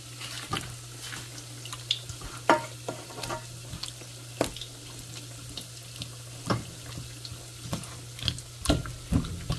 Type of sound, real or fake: real